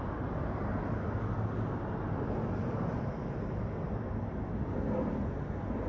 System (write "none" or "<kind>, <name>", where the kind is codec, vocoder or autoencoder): none